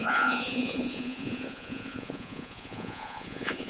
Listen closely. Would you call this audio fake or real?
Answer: fake